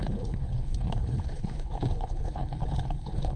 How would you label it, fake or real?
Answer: fake